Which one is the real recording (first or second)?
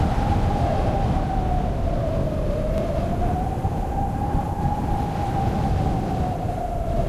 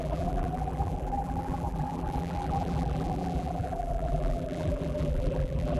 first